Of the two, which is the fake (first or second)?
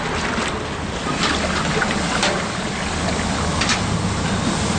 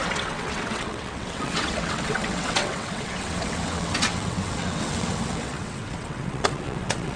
second